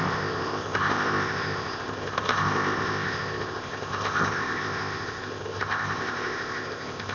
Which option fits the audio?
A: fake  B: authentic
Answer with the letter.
A